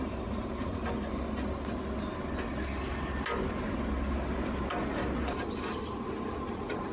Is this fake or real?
real